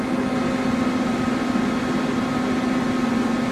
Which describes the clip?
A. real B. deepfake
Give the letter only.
A